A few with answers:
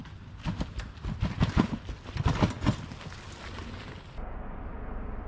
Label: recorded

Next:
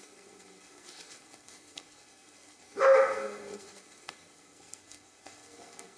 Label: remade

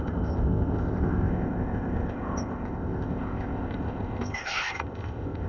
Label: remade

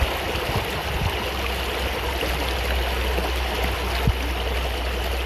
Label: recorded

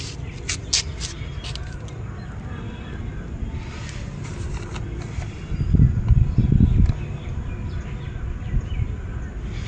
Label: recorded